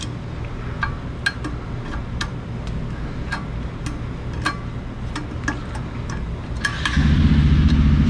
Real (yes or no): yes